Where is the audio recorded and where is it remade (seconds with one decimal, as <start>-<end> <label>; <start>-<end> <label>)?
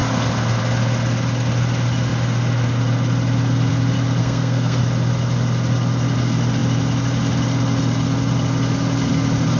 0.0-4.2 recorded; 4.2-4.8 remade; 4.8-9.6 recorded